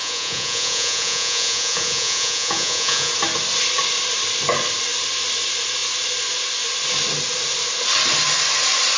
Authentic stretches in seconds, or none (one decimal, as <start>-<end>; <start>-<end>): 3.1-9.0